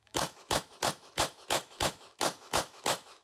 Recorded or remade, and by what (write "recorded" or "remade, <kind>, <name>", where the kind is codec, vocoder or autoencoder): remade, autoencoder, DAC-VAE